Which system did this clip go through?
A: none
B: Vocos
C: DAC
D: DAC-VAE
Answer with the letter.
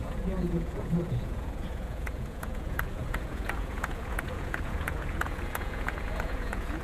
B